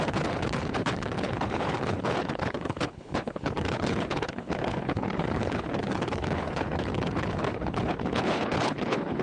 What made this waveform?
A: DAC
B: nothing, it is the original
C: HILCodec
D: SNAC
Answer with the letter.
C